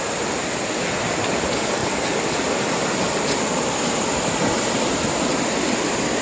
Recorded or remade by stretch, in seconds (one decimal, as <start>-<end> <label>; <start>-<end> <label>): 0.0-6.2 recorded